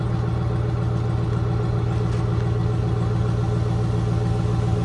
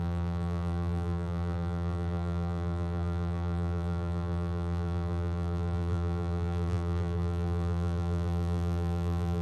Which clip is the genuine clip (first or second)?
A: first